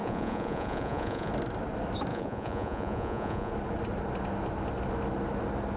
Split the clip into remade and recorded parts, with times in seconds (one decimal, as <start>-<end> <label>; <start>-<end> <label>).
0.0-1.3 remade; 1.3-2.1 recorded; 2.1-3.5 remade; 3.5-5.8 recorded